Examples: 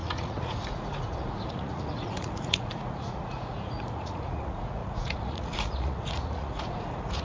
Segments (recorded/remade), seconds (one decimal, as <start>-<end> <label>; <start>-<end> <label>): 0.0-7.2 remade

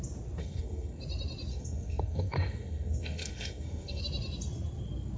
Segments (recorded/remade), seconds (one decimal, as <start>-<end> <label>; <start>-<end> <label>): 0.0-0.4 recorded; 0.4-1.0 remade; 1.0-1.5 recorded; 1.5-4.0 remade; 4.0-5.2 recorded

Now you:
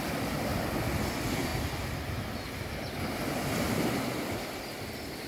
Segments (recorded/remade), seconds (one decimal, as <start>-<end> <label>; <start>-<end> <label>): 0.0-0.5 recorded; 0.5-1.0 remade; 1.0-5.3 recorded

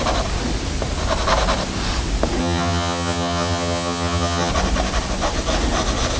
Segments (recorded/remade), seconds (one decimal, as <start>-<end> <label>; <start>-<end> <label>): 0.0-2.4 recorded; 2.4-4.5 remade; 4.5-6.2 recorded